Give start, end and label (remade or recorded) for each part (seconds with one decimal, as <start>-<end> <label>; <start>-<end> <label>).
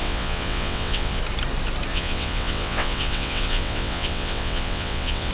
0.0-1.2 remade; 1.2-1.9 recorded; 1.9-5.3 remade